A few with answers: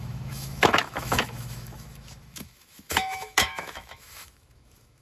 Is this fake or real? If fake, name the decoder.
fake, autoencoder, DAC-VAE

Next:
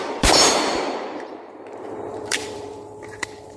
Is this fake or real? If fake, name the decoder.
fake, vocoder, BigVGAN v2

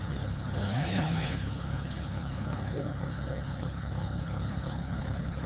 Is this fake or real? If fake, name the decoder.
fake, codec, HILCodec